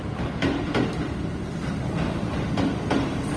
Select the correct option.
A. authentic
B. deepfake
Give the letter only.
A